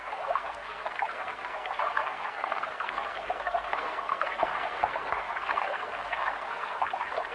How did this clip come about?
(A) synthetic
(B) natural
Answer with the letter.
A